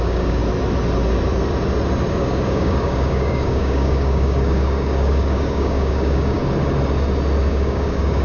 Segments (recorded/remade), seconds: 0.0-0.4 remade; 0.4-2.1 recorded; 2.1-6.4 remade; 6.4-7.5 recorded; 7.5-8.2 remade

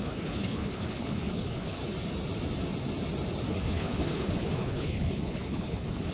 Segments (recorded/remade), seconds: 0.0-1.8 remade; 1.8-3.5 recorded; 3.5-6.1 remade

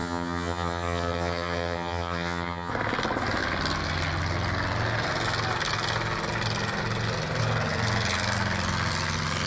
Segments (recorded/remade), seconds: 0.0-2.7 remade; 2.7-9.5 recorded

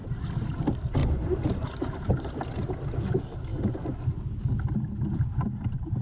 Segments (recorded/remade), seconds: 0.0-1.0 recorded; 1.0-2.7 remade; 2.7-6.0 recorded

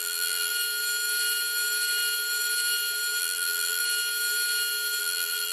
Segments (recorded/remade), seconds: 0.0-0.5 remade; 0.5-3.2 recorded; 3.2-3.8 remade; 3.8-5.0 recorded; 5.0-5.5 remade